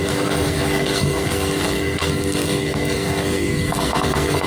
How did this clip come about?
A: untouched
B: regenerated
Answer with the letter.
B